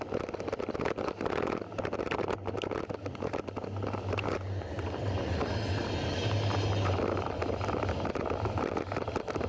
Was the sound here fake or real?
real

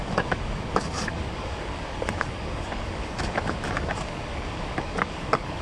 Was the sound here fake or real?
fake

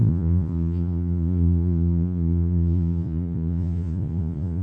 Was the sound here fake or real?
fake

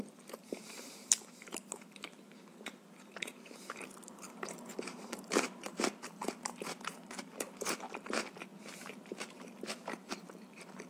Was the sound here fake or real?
fake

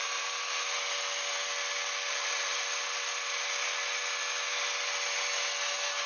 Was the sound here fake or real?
real